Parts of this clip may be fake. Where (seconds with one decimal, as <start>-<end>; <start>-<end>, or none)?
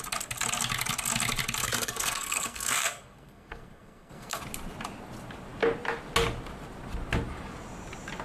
1.6-4.4